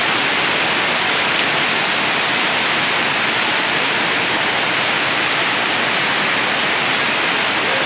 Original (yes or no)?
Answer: yes